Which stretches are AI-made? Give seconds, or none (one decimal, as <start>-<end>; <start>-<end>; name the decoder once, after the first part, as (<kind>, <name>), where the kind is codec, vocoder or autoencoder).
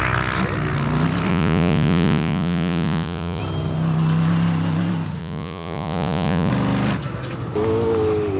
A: 1.3-3.4 (vocoder, Vocos); 5.2-6.5